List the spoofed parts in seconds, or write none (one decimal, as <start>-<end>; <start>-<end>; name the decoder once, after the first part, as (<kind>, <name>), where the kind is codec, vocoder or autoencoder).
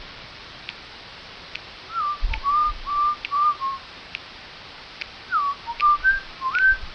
0.0-6.9 (vocoder, BigVGAN v2)